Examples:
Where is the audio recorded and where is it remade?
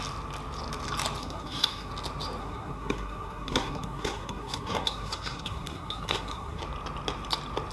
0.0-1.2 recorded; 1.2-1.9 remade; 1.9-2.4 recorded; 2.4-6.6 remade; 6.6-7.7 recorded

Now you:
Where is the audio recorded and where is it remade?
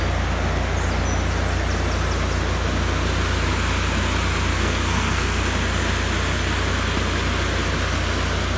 0.0-4.5 recorded; 4.5-5.4 remade; 5.4-8.6 recorded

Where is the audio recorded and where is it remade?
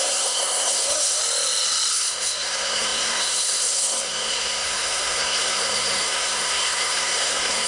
0.0-1.2 remade; 1.2-1.9 recorded; 1.9-7.7 remade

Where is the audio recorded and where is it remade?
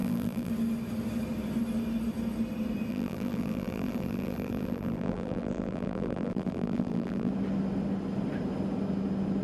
0.0-0.5 remade; 0.5-2.9 recorded; 2.9-7.3 remade; 7.3-9.4 recorded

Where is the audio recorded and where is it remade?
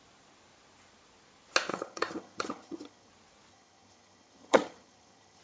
0.0-1.7 recorded; 1.7-3.1 remade; 3.1-3.5 recorded; 3.5-5.4 remade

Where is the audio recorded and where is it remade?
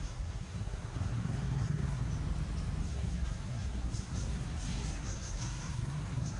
0.0-2.1 remade; 2.1-2.8 recorded; 2.8-6.4 remade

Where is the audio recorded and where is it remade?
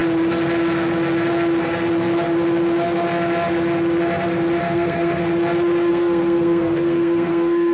0.0-4.6 recorded; 4.6-5.2 remade; 5.2-5.9 recorded; 5.9-7.7 remade